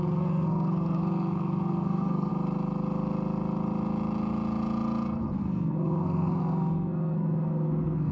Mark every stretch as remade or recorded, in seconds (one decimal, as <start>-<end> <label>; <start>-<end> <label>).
0.0-2.3 remade; 2.3-5.4 recorded; 5.4-8.1 remade